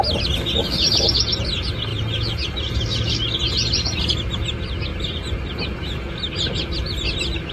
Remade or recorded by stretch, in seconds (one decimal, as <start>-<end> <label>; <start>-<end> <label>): 0.0-1.9 recorded; 1.9-2.7 remade; 2.7-7.5 recorded